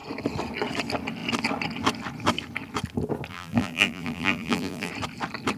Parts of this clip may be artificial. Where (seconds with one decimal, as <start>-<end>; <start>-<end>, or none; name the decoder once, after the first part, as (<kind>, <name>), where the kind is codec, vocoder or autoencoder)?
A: 3.3-4.9 (vocoder, BigVGAN v2)